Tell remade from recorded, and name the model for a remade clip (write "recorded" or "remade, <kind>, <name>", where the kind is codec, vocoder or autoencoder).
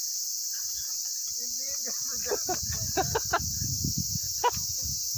recorded